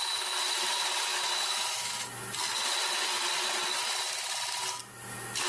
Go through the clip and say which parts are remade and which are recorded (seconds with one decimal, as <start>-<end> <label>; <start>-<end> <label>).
0.0-1.1 recorded; 1.1-1.9 remade; 1.9-5.5 recorded